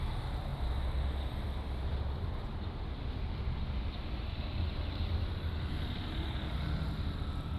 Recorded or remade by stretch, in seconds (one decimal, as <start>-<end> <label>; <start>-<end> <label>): 0.0-7.6 recorded

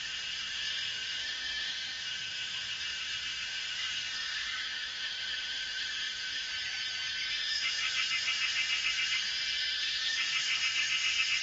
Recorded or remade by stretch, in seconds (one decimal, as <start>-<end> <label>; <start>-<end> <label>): 0.0-6.5 remade; 6.5-7.3 recorded; 7.3-11.4 remade